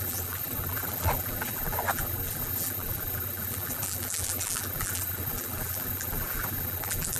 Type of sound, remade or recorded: remade